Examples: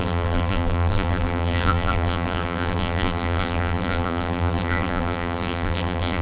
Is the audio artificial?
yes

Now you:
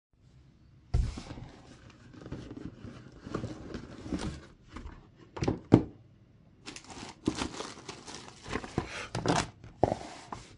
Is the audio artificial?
no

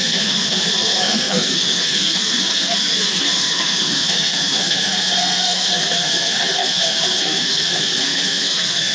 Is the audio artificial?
yes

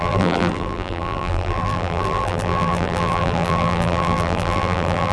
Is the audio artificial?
yes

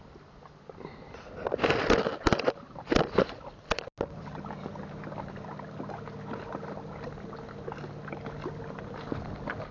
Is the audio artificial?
no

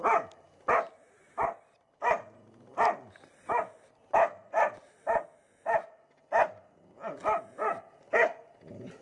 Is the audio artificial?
no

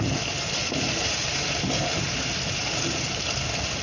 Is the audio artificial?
no